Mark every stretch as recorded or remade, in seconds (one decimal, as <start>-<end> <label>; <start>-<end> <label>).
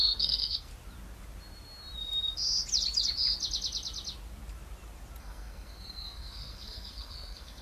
0.0-0.7 remade; 0.7-5.2 recorded; 5.2-7.6 remade